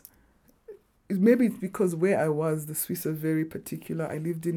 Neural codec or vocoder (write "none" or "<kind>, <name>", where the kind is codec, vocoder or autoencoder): none